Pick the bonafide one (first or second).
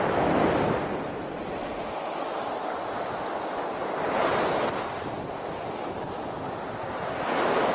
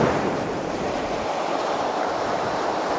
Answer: first